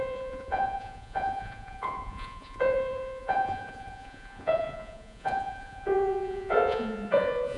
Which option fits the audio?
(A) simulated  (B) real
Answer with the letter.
A